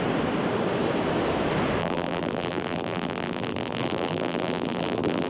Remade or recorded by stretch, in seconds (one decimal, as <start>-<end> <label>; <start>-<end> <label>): 0.0-1.8 recorded; 1.8-5.3 remade